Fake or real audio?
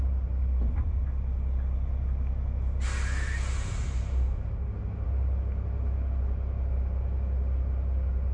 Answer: real